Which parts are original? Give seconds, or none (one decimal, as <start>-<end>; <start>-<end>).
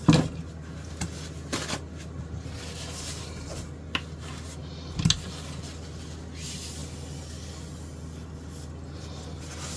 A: 0.0-9.8